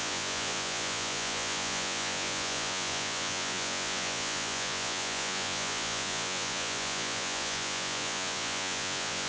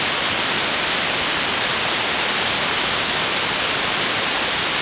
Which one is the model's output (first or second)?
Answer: first